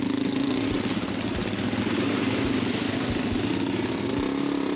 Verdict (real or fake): real